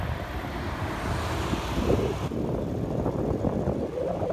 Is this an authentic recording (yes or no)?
yes